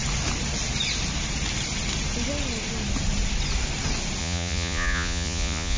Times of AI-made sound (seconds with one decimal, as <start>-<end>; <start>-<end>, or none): 4.2-5.8